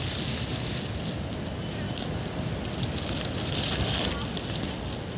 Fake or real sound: real